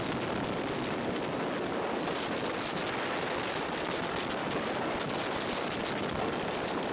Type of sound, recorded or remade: recorded